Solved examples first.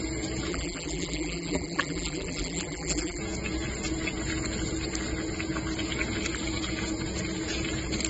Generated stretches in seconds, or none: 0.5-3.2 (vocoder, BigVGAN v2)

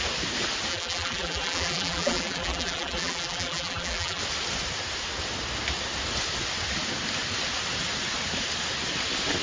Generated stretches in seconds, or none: 0.7-4.2 (vocoder, BigVGAN v2)